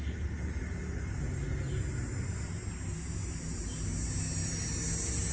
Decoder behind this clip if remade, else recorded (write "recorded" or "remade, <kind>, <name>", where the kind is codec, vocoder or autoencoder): recorded